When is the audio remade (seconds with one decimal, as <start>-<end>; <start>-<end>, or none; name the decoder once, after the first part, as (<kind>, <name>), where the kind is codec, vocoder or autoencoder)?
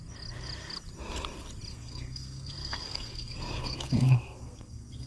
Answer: 1.7-5.1 (codec, SNAC)